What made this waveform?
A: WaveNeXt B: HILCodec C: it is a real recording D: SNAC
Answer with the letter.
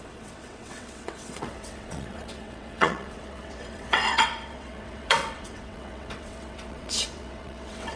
A